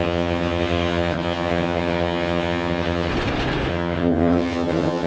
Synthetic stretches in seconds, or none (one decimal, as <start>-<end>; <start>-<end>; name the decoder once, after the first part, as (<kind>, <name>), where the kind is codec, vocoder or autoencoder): 0.0-3.1 (vocoder, HiFi-GAN); 3.7-5.1